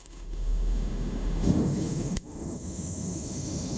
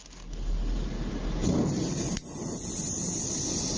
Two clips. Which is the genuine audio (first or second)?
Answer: second